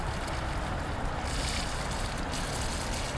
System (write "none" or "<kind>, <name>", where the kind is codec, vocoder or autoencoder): none